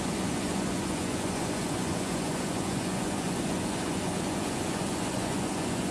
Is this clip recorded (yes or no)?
no